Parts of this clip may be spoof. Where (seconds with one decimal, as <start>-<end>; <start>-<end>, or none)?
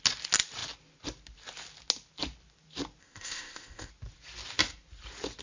3.0-3.9